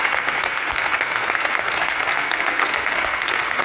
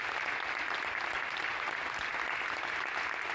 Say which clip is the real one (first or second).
second